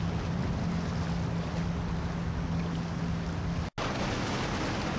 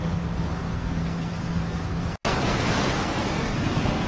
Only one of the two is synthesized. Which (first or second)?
second